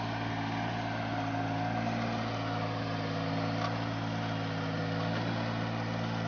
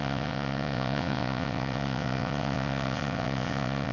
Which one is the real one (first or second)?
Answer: first